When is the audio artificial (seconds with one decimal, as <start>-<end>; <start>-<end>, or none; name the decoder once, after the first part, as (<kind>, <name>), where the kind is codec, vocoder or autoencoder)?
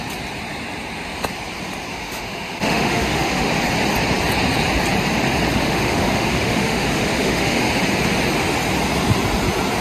1.9-3.5 (autoencoder, DAC-VAE); 5.5-7.6